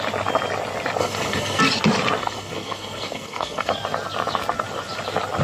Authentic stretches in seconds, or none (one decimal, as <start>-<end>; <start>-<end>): 0.0-1.0; 1.6-2.2; 3.7-5.4